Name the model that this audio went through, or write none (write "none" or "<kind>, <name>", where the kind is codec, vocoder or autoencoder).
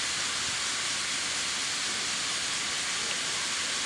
none